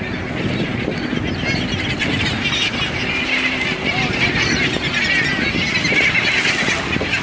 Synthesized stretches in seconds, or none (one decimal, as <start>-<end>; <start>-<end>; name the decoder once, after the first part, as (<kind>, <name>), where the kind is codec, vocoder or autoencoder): none